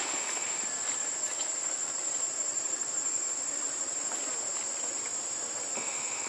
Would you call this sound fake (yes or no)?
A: yes